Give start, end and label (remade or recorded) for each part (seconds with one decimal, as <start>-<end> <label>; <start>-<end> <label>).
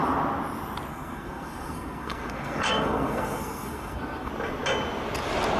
0.0-0.9 recorded; 0.9-4.3 remade; 4.3-5.6 recorded